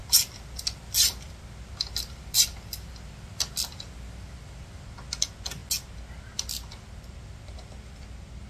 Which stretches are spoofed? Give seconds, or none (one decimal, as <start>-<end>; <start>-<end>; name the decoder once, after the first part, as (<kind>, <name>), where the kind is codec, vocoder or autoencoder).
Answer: none